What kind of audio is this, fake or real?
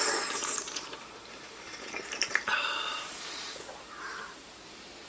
fake